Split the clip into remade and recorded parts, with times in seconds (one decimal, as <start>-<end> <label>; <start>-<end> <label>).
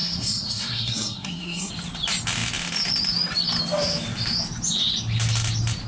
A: 0.0-1.7 remade; 1.7-5.9 recorded